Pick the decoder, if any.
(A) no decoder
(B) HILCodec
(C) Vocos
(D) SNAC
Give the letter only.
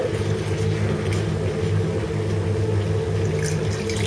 A